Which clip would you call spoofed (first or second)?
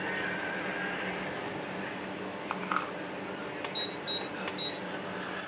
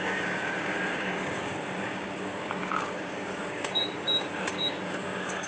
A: second